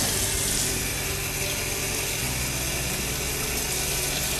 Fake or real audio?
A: real